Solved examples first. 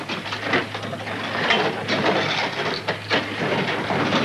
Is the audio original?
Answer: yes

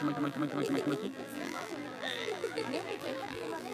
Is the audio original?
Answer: no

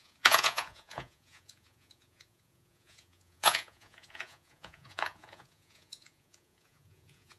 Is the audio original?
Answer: no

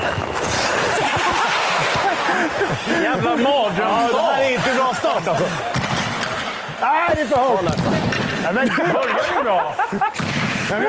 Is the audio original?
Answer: yes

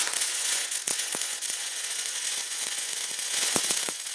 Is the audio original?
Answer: no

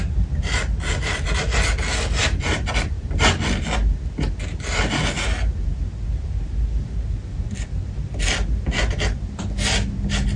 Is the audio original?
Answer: yes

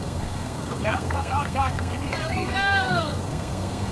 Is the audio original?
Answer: no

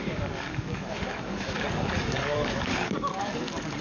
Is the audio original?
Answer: no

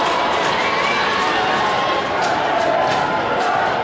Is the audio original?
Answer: yes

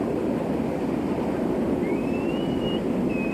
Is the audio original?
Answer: yes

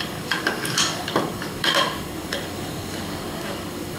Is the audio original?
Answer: no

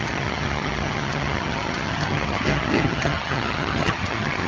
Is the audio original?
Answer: no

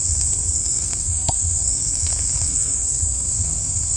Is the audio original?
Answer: no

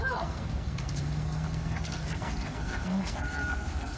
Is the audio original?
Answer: no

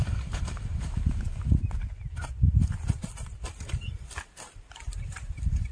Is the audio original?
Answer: yes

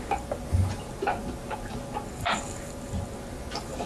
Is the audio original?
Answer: yes